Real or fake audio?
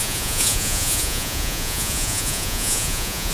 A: fake